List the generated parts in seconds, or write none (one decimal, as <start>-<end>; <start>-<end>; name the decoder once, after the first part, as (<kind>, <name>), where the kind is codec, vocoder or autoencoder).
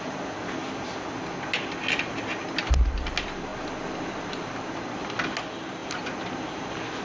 none